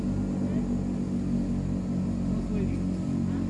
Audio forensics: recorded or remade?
recorded